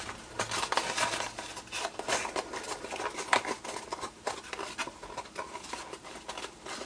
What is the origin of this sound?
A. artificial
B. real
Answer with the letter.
B